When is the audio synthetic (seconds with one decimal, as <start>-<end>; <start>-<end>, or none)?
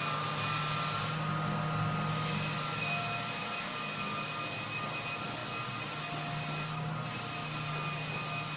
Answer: none